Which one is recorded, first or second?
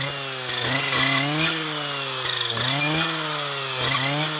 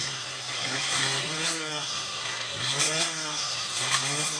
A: first